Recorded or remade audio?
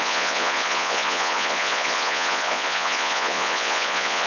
remade